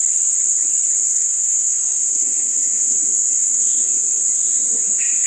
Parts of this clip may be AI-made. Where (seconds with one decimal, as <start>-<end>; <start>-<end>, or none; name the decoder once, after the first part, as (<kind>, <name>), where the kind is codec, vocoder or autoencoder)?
1.0-4.2 (codec, SNAC)